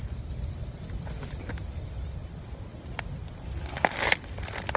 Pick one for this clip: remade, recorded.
recorded